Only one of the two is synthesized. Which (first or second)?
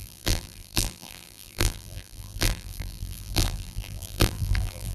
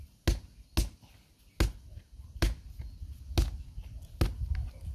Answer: first